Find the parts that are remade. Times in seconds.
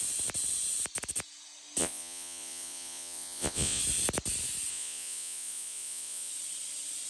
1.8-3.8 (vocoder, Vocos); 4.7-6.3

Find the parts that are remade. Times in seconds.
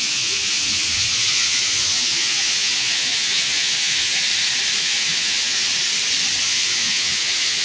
0.0-4.3 (vocoder, Vocos); 4.8-5.7; 6.4-7.6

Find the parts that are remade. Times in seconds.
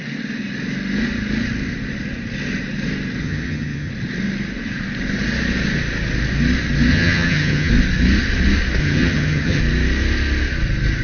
3.2-3.9 (vocoder, HiFi-GAN); 6.9-7.7; 8.8-9.6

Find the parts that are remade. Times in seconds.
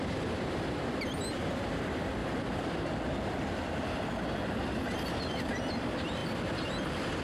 0.0-2.2 (vocoder, BigVGAN v2); 5.2-7.2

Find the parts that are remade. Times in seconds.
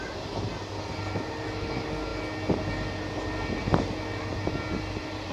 none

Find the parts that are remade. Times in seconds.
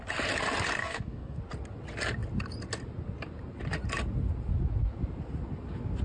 0.8-1.4 (codec, DAC)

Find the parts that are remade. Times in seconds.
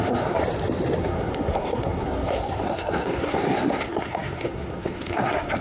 0.0-0.4 (codec, SNAC); 1.0-5.6